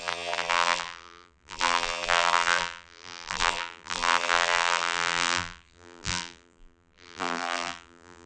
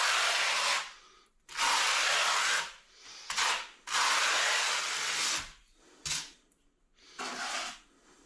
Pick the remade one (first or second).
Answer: first